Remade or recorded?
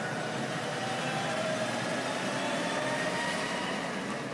remade